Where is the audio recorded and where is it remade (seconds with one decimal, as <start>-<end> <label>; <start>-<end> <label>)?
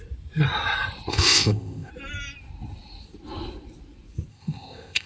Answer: 0.0-1.1 recorded; 1.1-1.9 remade; 1.9-4.3 recorded; 4.3-5.1 remade